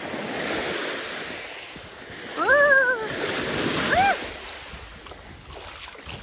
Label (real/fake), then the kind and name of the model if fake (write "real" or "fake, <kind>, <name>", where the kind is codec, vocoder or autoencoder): real